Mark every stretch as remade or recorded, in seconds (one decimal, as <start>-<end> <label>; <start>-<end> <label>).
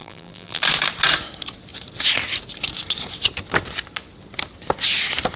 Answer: 0.0-0.6 remade; 0.6-5.4 recorded